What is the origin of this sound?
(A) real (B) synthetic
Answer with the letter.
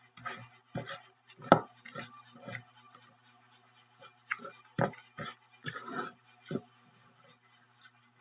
A